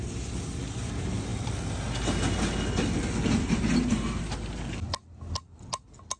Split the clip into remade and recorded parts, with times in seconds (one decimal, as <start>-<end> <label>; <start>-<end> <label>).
0.0-6.2 recorded